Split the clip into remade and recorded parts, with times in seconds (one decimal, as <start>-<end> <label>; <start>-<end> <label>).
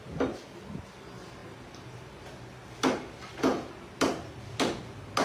0.0-1.4 recorded; 1.4-2.4 remade; 2.4-3.5 recorded; 3.5-4.1 remade; 4.1-5.2 recorded